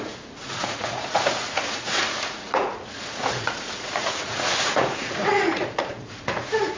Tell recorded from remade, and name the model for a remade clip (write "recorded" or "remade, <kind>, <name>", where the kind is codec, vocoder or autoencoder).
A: remade, vocoder, Vocos